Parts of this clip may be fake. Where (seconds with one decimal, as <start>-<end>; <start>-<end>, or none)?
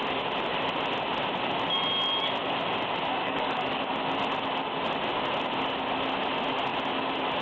3.2-3.8